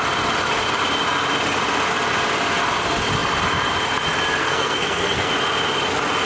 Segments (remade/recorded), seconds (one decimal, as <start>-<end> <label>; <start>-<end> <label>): 0.0-4.4 recorded; 4.4-5.3 remade; 5.3-6.3 recorded